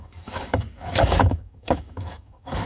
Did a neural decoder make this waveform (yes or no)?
yes